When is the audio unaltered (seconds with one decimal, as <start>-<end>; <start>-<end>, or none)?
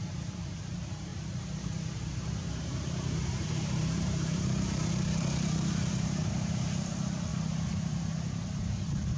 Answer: 7.3-7.9